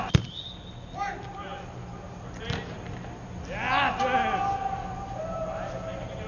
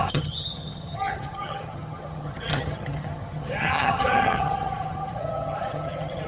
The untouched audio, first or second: first